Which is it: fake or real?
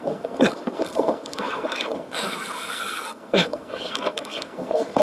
fake